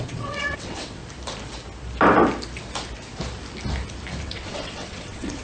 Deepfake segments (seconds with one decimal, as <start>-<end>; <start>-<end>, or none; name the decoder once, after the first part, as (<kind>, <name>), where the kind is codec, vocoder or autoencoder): 0.0-1.0 (vocoder, WaveNeXt); 4.2-5.4